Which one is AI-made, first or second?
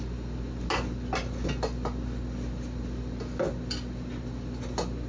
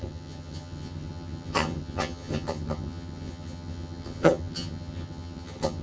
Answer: second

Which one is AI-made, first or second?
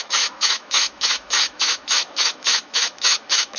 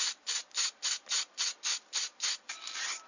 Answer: first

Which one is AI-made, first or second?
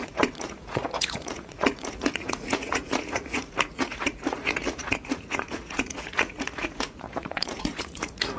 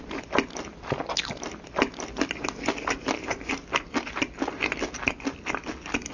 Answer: first